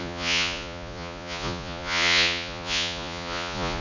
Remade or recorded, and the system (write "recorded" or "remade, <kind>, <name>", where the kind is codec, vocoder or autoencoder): remade, vocoder, Vocos